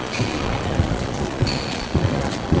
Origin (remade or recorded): remade